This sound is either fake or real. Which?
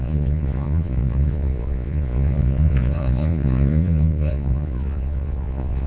fake